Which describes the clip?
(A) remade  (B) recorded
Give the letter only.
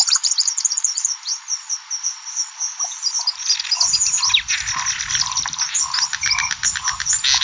B